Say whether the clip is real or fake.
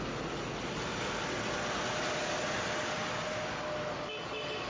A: real